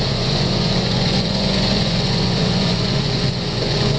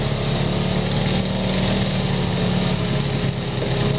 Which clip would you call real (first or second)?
second